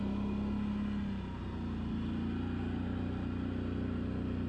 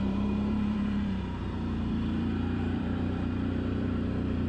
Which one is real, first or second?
first